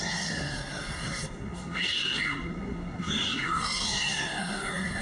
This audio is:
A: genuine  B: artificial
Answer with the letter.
B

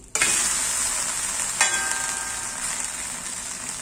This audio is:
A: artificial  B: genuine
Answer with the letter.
B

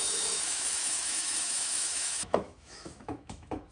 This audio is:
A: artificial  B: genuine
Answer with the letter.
A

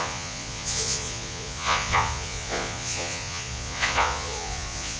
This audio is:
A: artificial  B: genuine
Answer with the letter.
A